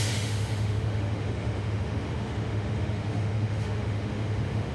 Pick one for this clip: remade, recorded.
remade